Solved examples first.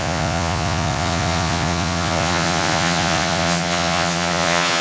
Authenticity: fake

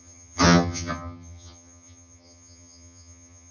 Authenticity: fake